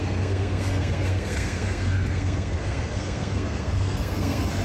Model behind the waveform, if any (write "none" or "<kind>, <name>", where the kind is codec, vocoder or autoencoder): codec, SNAC